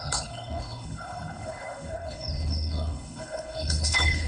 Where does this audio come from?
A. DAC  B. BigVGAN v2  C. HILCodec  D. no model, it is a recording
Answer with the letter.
C